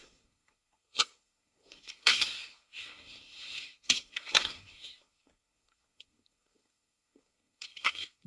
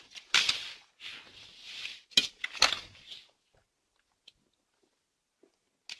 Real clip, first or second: second